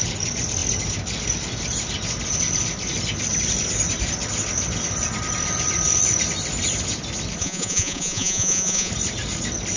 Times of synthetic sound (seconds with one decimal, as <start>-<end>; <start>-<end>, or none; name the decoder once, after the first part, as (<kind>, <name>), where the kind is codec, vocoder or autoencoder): 7.4-8.9 (vocoder, Vocos)